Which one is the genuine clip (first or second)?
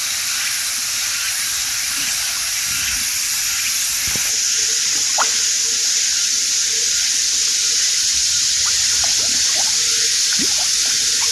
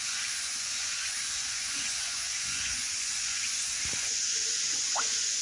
first